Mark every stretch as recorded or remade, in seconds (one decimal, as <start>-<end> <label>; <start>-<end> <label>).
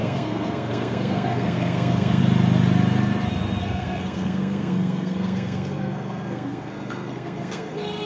0.0-2.2 remade; 2.2-3.6 recorded; 3.6-8.1 remade